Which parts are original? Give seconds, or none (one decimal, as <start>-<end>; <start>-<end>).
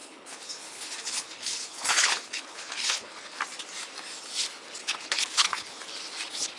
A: 3.4-4.8; 5.8-6.6